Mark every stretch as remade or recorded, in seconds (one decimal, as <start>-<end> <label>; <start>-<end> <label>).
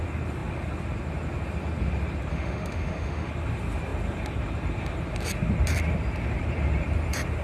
0.0-2.3 recorded; 2.3-3.3 remade; 3.3-7.4 recorded